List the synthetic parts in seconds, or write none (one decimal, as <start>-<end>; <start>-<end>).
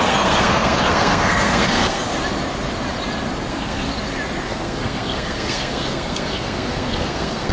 0.0-2.1; 3.5-3.9; 4.5-7.5